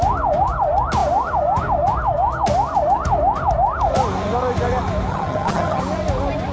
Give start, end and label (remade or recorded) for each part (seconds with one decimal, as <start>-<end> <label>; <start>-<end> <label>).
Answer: 0.0-5.1 recorded; 5.1-5.8 remade; 5.8-6.5 recorded